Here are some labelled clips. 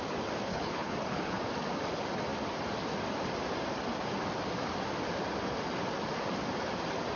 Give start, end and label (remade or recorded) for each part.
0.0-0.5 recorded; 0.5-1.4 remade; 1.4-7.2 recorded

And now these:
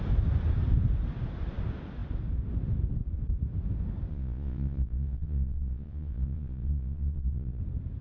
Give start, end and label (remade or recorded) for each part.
0.0-4.1 recorded; 4.1-7.6 remade; 7.6-8.0 recorded